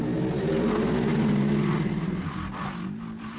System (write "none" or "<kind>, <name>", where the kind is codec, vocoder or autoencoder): none